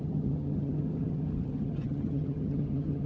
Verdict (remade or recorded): remade